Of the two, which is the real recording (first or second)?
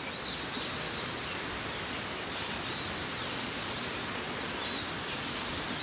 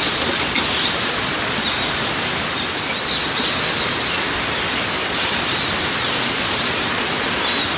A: first